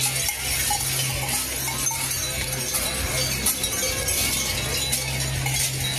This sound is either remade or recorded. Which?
recorded